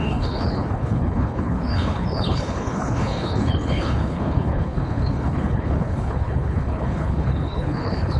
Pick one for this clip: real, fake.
fake